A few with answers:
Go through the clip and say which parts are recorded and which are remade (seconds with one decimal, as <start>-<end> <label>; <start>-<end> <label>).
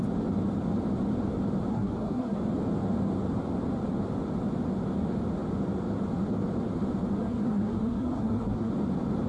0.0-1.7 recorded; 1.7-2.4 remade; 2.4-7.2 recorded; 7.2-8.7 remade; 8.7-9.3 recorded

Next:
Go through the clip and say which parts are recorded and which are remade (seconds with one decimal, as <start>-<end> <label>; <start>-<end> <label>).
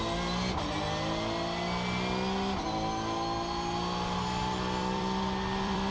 0.0-4.8 recorded; 4.8-5.9 remade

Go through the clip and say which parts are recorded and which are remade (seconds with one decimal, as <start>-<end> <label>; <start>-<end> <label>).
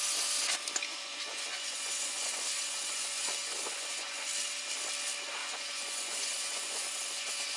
0.0-0.9 recorded; 0.9-4.3 remade; 4.3-5.4 recorded; 5.4-7.6 remade